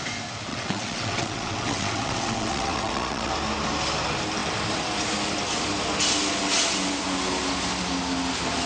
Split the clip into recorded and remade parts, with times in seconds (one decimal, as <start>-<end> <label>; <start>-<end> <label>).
0.0-0.5 recorded; 0.5-3.3 remade; 3.3-8.7 recorded